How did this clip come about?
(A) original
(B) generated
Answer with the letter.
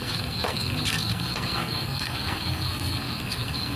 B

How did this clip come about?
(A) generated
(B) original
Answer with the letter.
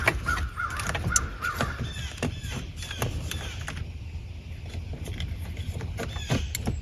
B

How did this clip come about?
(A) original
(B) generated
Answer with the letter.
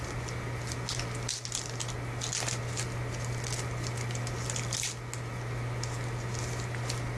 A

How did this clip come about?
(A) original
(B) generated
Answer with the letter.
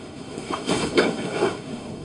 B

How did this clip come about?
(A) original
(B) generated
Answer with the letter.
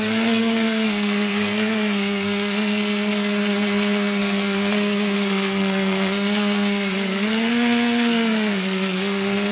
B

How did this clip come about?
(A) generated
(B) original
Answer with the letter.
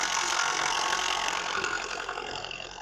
A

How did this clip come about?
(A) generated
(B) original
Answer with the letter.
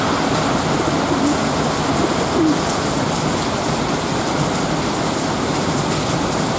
B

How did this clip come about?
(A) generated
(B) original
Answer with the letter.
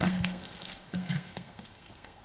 A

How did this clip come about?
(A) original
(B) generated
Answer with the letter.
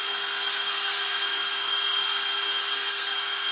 B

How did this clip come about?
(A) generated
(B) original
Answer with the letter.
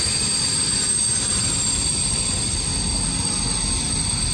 B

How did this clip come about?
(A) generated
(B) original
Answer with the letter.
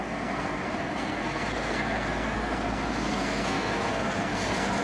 A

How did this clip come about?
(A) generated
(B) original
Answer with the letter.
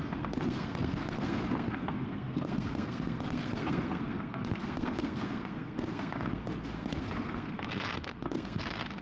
A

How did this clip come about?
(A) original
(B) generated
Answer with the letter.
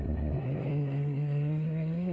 B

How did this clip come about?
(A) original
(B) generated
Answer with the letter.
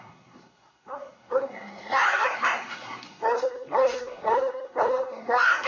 B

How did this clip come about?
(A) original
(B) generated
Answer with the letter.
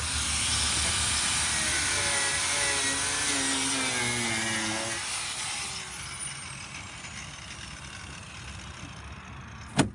A